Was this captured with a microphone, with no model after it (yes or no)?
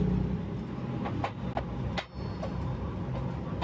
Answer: yes